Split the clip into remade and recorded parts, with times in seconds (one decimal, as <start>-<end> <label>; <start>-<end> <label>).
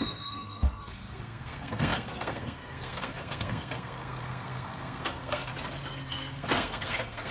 0.0-5.4 remade; 5.4-6.1 recorded; 6.1-7.3 remade